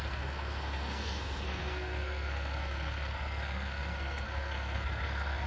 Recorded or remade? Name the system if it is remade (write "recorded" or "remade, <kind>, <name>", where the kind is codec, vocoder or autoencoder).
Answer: remade, codec, SNAC